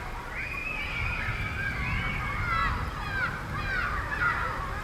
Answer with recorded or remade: recorded